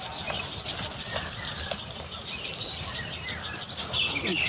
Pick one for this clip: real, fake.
real